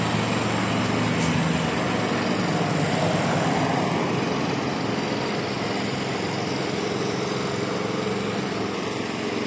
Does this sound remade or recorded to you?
recorded